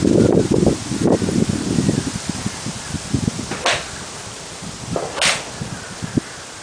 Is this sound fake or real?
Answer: real